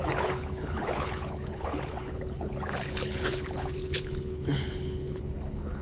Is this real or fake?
fake